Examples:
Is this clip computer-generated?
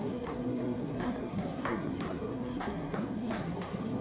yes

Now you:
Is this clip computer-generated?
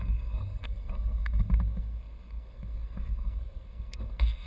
yes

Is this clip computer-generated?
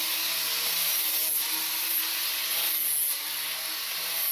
no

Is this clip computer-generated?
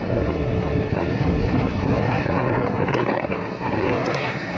yes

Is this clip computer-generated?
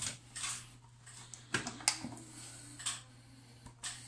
no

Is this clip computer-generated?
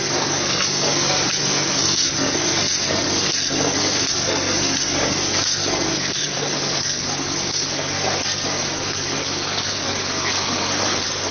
yes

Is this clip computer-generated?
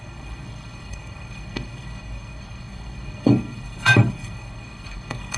yes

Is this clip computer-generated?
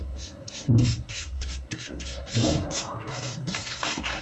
yes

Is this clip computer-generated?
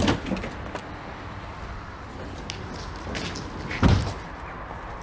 no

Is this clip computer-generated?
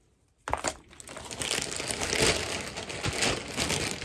no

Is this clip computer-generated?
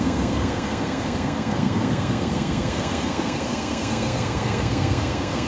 yes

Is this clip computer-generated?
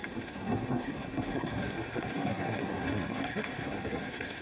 yes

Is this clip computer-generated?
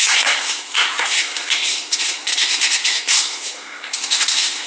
yes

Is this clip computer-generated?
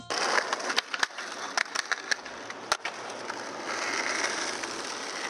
no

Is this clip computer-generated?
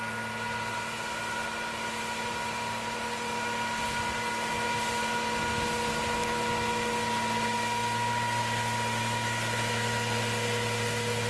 no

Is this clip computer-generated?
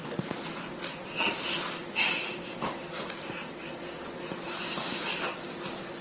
no